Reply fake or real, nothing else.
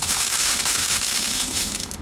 fake